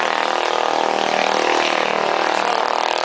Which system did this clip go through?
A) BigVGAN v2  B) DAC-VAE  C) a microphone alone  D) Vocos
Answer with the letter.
C